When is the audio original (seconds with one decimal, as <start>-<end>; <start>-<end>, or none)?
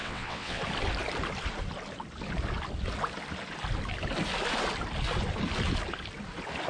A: 0.6-6.7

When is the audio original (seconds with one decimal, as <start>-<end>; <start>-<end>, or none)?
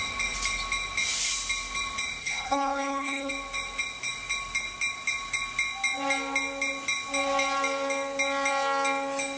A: 0.0-2.2; 3.3-9.4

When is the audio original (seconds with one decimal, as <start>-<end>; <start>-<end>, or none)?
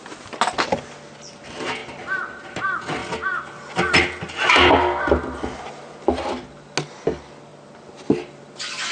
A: 0.0-8.9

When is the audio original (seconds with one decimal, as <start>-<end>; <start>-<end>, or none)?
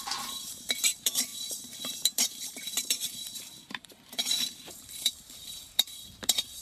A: none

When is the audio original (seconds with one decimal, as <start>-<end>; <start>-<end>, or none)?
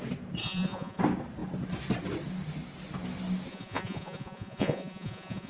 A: 0.0-0.4; 1.0-3.5